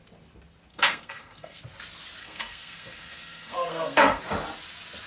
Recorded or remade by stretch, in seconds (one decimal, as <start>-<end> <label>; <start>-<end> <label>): 0.0-0.7 recorded; 0.7-1.6 remade; 1.6-2.2 recorded; 2.2-4.2 remade; 4.2-5.1 recorded